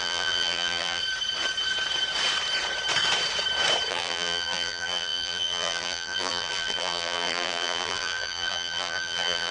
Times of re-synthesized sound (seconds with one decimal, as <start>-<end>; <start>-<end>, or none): 0.0-1.0; 3.9-9.5